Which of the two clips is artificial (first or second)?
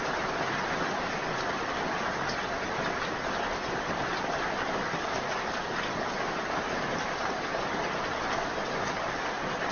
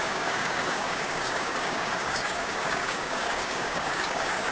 second